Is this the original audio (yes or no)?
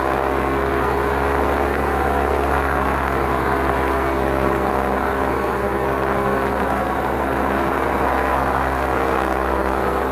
no